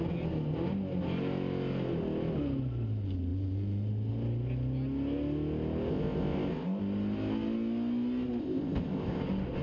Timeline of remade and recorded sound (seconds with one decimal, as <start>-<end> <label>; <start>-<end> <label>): 0.0-5.9 recorded; 5.9-6.8 remade; 6.8-8.4 recorded; 8.4-9.2 remade; 9.2-9.6 recorded